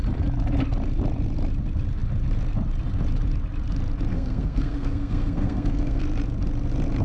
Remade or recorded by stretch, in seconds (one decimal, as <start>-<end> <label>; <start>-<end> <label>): 0.0-4.1 recorded; 4.1-6.0 remade; 6.0-7.0 recorded